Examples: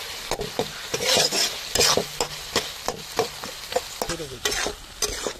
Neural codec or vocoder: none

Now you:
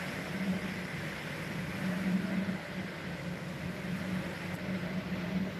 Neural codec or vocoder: none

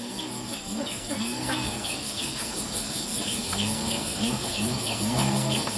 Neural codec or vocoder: codec, SNAC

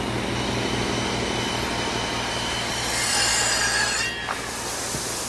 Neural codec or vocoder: none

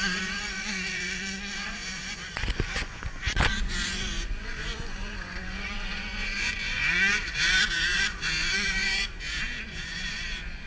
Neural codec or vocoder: vocoder, Vocos